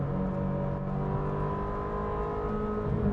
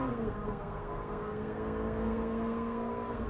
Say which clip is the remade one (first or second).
second